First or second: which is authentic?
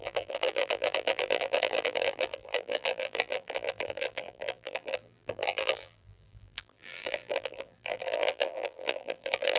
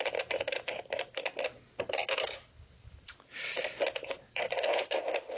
second